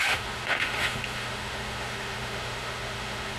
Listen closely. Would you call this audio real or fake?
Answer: fake